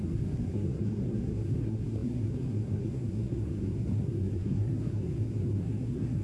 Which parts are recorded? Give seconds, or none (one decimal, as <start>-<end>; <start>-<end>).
none